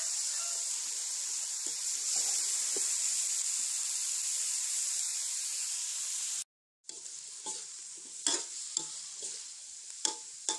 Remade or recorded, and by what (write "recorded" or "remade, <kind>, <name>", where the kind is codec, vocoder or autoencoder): recorded